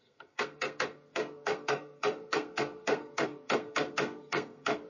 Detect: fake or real fake